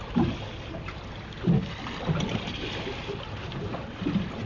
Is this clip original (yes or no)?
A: yes